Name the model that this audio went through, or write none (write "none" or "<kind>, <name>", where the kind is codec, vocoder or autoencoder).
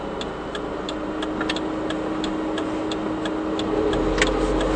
none